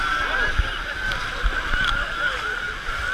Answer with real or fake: real